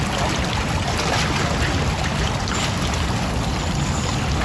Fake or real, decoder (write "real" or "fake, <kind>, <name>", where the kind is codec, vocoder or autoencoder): real